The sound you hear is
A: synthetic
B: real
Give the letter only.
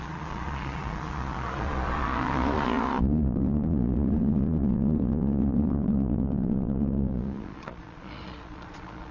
A